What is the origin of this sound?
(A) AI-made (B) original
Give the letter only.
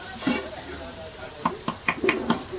B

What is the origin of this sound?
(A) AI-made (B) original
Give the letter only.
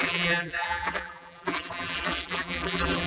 A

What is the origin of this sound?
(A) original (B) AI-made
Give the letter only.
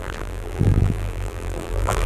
B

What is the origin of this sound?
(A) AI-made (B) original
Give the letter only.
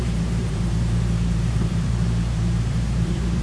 A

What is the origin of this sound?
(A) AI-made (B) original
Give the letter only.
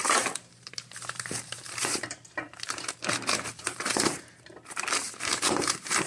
A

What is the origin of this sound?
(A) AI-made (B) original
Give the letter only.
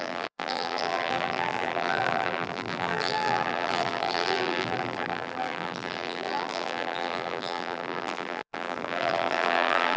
A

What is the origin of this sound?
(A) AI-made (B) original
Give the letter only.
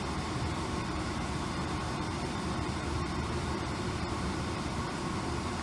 A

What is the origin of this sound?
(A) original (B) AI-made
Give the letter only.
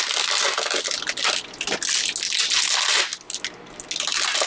A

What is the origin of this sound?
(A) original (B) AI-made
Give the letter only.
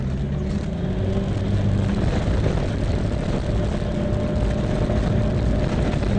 A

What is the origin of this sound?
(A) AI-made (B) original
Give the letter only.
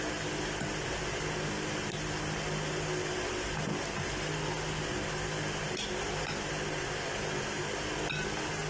B